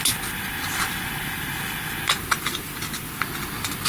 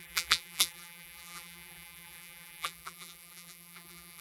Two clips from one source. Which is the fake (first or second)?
second